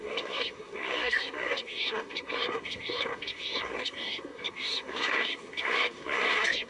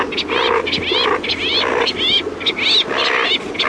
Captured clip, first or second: second